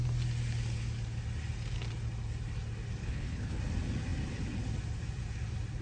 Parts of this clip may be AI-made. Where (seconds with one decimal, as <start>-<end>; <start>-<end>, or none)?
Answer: 3.0-3.6